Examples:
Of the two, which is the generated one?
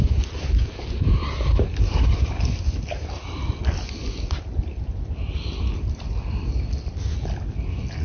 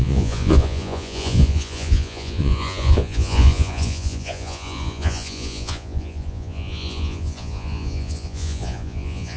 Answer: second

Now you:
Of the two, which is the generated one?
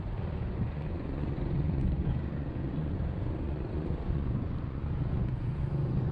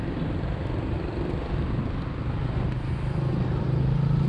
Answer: first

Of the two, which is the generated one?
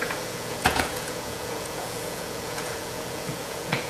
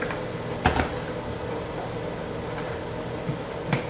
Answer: first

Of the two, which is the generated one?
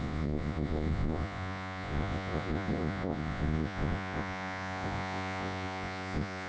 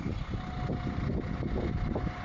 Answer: first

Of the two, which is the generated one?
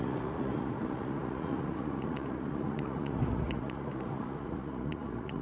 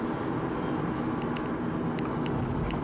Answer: first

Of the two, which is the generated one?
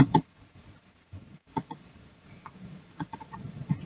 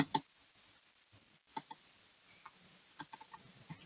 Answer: first